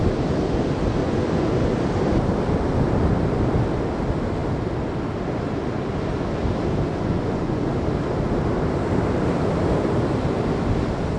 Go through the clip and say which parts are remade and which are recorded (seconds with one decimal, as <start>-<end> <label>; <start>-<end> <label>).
0.0-1.0 recorded; 1.0-1.5 remade; 1.5-6.9 recorded; 6.9-7.7 remade; 7.7-11.2 recorded